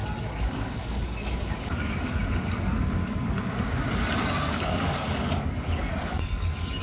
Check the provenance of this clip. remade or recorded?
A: remade